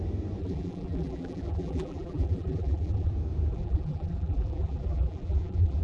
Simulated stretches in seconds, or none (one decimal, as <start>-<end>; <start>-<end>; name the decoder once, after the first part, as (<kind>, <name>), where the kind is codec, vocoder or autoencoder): 0.4-3.1 (vocoder, BigVGAN v2); 3.5-5.8